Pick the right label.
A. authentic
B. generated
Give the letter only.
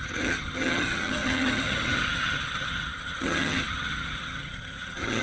B